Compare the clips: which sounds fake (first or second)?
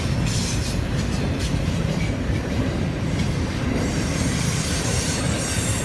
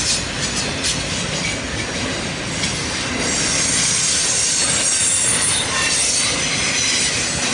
first